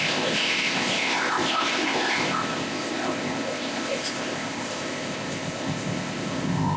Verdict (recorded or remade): remade